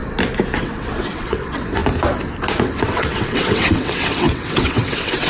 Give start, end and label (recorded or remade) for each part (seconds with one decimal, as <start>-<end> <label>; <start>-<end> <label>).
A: 0.0-0.6 recorded; 0.6-1.8 remade; 1.8-2.6 recorded; 2.6-5.3 remade